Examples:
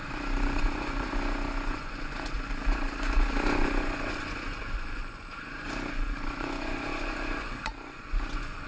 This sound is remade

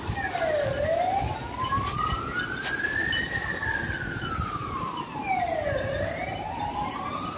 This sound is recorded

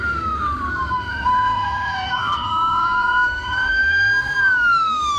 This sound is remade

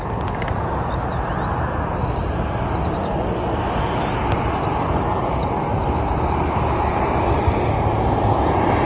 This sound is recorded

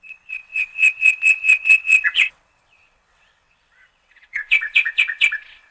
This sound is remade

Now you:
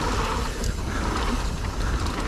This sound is recorded